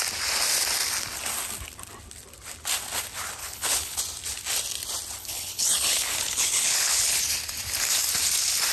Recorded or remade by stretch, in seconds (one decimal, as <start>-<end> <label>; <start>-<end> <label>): 0.0-3.4 recorded; 3.4-4.0 remade; 4.0-5.2 recorded; 5.2-7.2 remade; 7.2-8.7 recorded